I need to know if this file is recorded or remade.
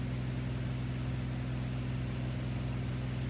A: recorded